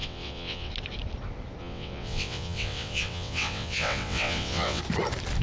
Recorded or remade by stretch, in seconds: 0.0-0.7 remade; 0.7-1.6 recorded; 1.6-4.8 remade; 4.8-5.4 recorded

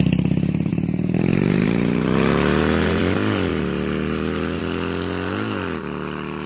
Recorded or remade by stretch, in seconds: 0.0-0.7 recorded; 0.7-3.0 remade; 3.0-3.5 recorded; 3.5-4.6 remade; 4.6-6.5 recorded

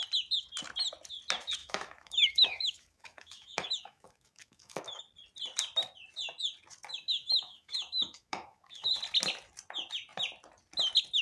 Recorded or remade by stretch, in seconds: 0.0-1.6 recorded; 1.6-5.0 remade; 5.0-6.9 recorded; 6.9-9.0 remade; 9.0-11.2 recorded